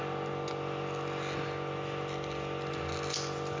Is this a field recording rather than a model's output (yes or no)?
yes